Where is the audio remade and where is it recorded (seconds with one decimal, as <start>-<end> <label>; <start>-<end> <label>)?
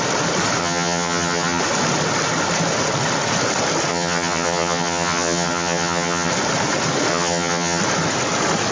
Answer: 0.0-0.6 recorded; 0.6-1.6 remade; 1.6-3.9 recorded; 3.9-6.3 remade; 6.3-7.1 recorded; 7.1-7.8 remade; 7.8-8.7 recorded